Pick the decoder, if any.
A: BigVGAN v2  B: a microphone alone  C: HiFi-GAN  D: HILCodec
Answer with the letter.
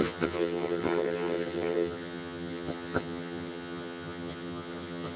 C